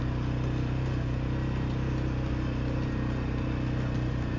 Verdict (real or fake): real